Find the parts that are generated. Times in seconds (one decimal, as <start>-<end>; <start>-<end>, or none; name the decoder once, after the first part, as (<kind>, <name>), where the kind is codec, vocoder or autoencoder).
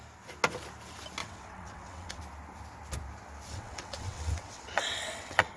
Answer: 1.2-2.2 (vocoder, WaveNeXt); 3.5-5.6